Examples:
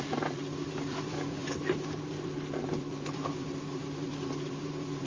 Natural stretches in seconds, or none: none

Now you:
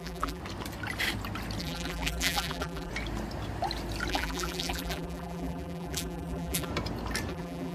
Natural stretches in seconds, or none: 0.4-1.6; 2.9-4.1; 6.7-7.3